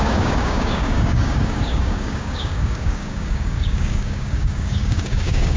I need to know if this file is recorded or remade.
remade